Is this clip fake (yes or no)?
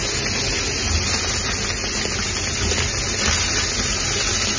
no